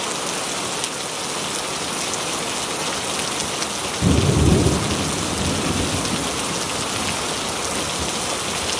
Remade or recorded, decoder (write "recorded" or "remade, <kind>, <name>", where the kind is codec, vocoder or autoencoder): recorded